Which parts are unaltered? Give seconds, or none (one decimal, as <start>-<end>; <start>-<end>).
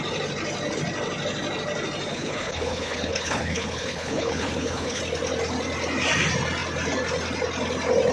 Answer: 0.0-2.1; 5.0-8.1